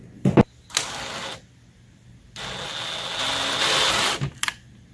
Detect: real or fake real